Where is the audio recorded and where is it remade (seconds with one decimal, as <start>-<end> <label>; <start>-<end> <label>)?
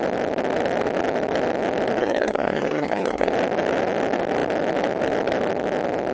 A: 0.0-2.0 recorded; 2.0-3.3 remade; 3.3-6.1 recorded